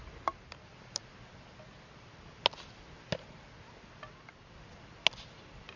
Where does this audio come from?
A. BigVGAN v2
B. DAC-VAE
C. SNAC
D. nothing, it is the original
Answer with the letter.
D